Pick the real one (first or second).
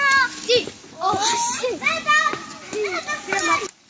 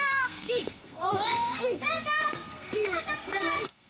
first